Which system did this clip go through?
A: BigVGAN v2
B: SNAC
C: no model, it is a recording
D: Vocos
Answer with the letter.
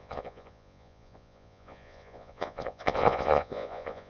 D